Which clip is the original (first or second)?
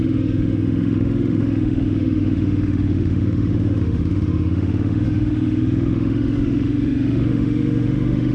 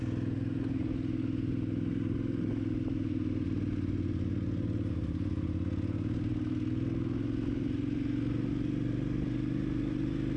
second